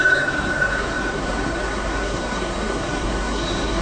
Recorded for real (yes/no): no